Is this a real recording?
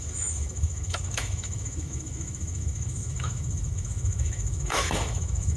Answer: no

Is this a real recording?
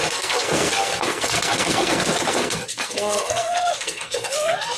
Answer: no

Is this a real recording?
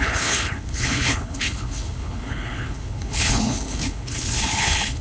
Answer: no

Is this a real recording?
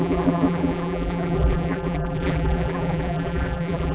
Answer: no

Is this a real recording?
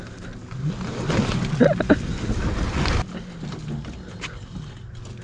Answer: yes